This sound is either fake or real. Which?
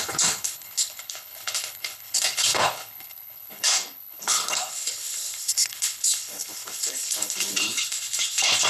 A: fake